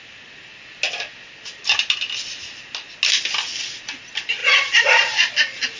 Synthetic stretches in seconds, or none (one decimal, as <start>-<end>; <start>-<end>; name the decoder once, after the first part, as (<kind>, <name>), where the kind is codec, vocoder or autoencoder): 4.4-5.3 (vocoder, BigVGAN v2)